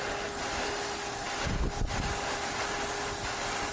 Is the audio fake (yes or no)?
no